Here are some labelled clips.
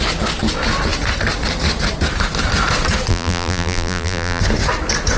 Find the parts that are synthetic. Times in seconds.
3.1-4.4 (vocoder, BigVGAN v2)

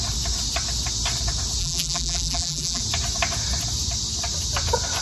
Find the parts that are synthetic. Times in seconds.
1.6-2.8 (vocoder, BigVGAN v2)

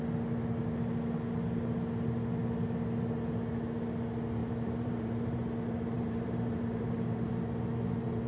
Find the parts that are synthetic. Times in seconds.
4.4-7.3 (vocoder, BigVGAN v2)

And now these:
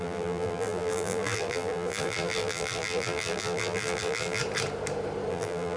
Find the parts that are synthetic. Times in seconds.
0.0-4.4 (vocoder, BigVGAN v2); 5.3-5.8

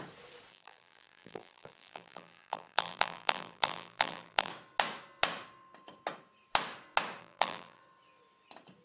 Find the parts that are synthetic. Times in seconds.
0.5-4.5 (vocoder, BigVGAN v2); 7.2-7.8

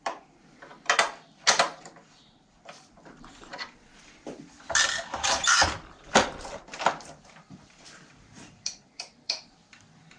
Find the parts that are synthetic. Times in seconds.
0.0-10.2 (vocoder, BigVGAN v2)

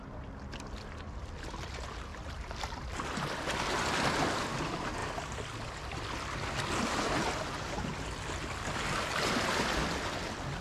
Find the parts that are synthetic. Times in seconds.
none

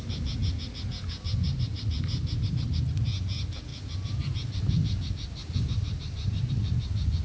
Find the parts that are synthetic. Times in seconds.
1.4-2.8 (vocoder, BigVGAN v2); 3.7-6.5